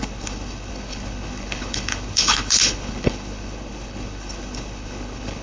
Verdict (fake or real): fake